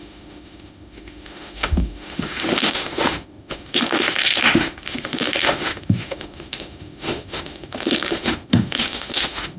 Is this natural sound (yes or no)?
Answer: no